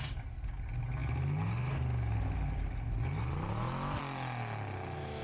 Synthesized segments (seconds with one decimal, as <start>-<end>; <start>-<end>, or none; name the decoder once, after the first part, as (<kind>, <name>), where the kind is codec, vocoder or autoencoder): none